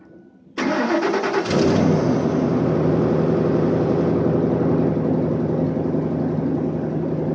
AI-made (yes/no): no